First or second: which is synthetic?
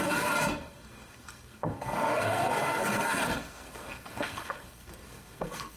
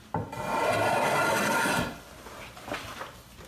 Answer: first